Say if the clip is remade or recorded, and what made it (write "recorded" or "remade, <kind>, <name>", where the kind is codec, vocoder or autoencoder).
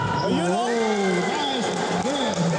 recorded